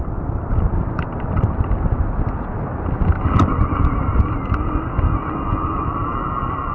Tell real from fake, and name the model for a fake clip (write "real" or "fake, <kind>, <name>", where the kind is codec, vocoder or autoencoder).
real